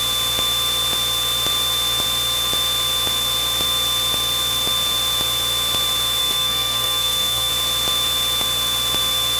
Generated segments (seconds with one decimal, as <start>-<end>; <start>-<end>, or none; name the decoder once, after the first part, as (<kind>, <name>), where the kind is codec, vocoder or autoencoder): 6.2-7.5 (codec, SNAC)